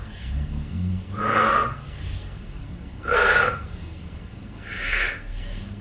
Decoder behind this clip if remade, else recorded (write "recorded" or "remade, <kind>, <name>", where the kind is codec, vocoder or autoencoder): remade, codec, SNAC